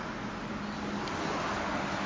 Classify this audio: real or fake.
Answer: real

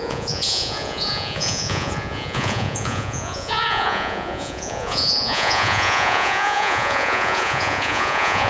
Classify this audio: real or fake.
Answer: fake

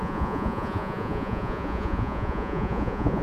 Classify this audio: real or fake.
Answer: fake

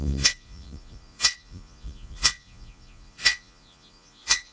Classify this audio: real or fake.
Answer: fake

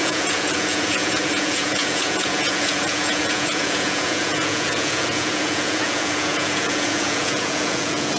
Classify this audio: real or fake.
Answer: fake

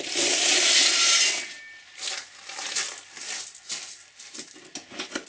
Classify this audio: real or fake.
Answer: real